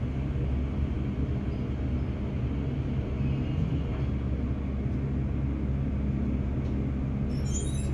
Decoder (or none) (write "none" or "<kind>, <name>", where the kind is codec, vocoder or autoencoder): none